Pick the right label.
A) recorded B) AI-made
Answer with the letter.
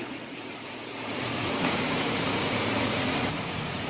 B